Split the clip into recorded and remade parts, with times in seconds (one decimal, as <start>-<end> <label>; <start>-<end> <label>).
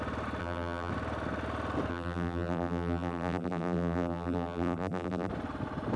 0.0-0.4 recorded; 0.4-0.9 remade; 0.9-1.9 recorded; 1.9-5.3 remade; 5.3-6.0 recorded